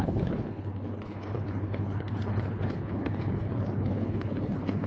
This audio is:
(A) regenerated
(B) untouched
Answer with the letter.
A